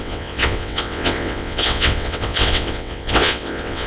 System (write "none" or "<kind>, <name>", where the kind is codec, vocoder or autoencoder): vocoder, WaveNeXt